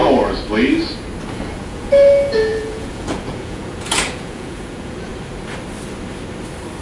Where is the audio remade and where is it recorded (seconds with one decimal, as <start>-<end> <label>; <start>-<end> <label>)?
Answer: 0.0-1.3 recorded; 1.3-5.1 remade; 5.1-6.8 recorded